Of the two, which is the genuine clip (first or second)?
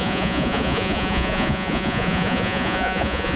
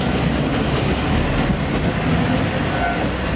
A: second